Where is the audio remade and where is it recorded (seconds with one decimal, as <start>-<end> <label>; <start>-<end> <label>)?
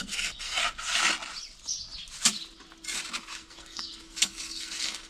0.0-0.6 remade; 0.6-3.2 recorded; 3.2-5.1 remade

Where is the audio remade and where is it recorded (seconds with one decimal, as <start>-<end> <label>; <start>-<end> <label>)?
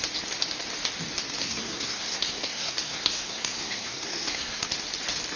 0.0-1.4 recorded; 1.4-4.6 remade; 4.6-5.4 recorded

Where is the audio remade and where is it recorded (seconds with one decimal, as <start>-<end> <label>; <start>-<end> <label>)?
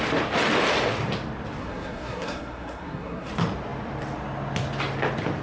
0.0-1.6 recorded; 1.6-3.3 remade; 3.3-5.4 recorded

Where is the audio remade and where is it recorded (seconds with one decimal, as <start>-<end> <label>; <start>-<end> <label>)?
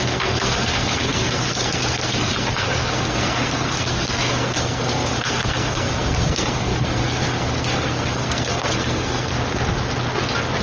0.0-9.3 remade; 9.3-10.6 recorded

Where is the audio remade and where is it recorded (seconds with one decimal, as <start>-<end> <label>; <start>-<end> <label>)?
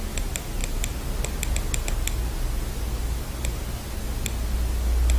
0.0-5.2 recorded